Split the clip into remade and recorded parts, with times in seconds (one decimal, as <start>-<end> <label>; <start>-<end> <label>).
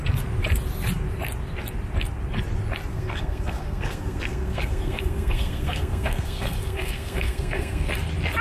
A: 0.0-2.9 recorded; 2.9-7.9 remade; 7.9-8.4 recorded